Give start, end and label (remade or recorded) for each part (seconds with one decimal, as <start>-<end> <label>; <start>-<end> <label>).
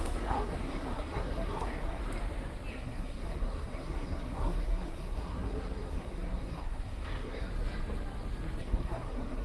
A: 0.0-2.0 remade; 2.0-2.7 recorded; 2.7-7.5 remade; 7.5-8.6 recorded; 8.6-9.4 remade